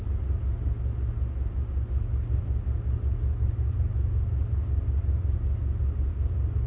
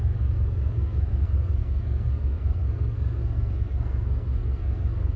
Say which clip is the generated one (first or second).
second